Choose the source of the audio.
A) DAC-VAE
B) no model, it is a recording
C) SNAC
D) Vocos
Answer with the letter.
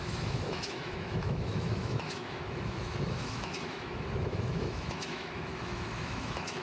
A